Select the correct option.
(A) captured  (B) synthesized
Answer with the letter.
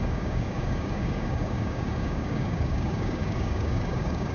B